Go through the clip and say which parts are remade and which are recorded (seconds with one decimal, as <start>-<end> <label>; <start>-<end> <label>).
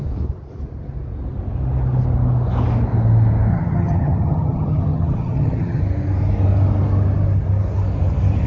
0.0-3.5 recorded; 3.5-5.8 remade; 5.8-8.5 recorded